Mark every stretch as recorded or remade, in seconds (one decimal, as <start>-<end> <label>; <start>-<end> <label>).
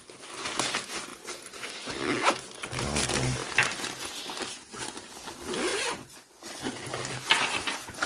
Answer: 0.0-5.7 recorded; 5.7-6.6 remade; 6.6-8.1 recorded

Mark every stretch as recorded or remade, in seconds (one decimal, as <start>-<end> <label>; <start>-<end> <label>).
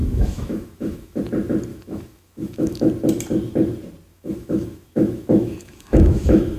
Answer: 0.0-1.2 remade; 1.2-1.7 recorded; 1.7-2.9 remade; 2.9-4.1 recorded; 4.1-6.6 remade